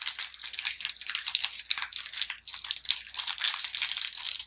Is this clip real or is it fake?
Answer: real